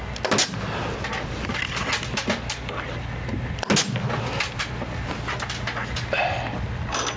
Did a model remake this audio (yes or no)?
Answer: no